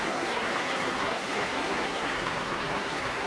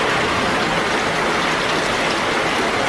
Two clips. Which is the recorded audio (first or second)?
second